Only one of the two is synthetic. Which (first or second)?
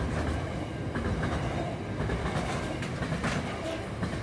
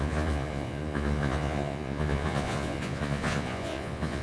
second